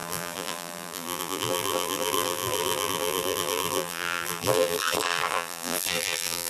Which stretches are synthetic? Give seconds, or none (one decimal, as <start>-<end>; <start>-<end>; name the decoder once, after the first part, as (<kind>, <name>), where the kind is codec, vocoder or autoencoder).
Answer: 0.0-6.5 (vocoder, BigVGAN v2)